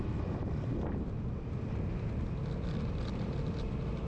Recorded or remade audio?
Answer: remade